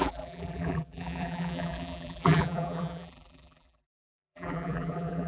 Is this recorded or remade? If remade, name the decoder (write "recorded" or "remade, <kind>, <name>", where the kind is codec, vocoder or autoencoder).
remade, vocoder, BigVGAN v2